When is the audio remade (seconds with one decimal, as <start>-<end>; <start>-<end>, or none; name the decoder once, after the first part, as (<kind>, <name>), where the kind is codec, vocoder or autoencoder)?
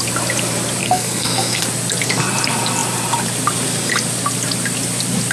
0.8-1.6 (codec, SNAC)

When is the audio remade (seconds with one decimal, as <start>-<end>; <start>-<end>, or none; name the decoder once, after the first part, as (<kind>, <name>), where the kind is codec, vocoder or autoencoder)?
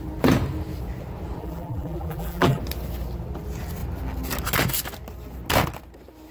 1.4-2.6 (vocoder, BigVGAN v2)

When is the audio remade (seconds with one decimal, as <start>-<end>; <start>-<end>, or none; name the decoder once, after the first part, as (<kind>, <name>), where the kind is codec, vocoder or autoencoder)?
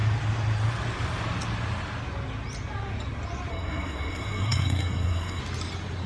3.5-5.4 (codec, SNAC)